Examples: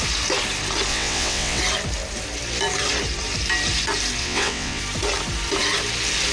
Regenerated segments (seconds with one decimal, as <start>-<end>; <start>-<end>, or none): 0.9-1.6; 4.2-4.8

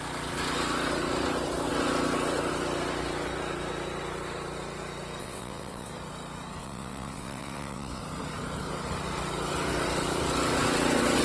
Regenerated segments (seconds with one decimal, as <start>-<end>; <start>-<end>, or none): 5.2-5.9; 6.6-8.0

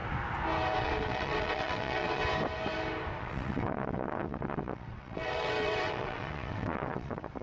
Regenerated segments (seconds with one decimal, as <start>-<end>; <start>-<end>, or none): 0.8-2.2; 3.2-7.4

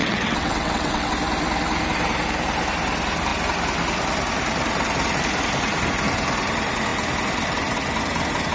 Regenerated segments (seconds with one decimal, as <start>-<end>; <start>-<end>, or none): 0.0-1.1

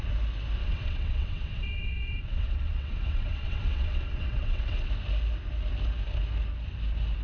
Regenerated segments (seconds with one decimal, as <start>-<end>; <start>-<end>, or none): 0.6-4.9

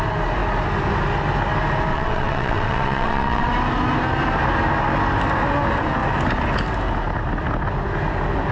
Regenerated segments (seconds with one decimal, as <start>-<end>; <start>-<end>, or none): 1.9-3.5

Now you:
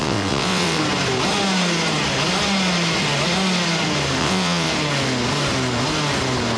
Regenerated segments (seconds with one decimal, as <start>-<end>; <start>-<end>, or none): 0.0-0.8; 4.2-4.7

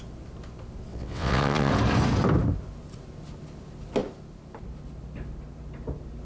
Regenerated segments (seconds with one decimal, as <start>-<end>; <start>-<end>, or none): 0.9-1.7